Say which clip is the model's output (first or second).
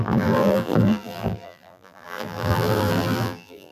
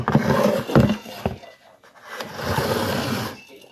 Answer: first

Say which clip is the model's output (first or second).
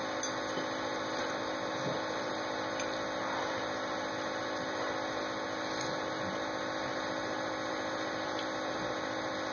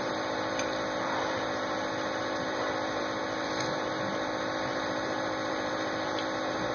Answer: second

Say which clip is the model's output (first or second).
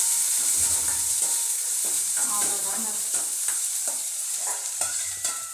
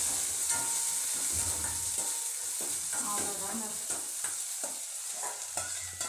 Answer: first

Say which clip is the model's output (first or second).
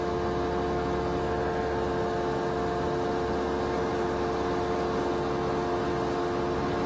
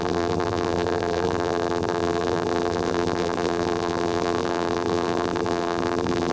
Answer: second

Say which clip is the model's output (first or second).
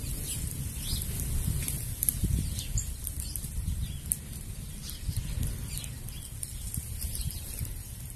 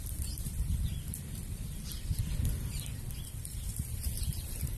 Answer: second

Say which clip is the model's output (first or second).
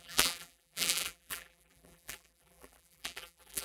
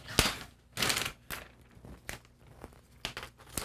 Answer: first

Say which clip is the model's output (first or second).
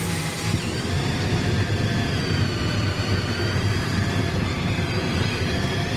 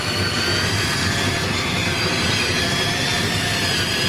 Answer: first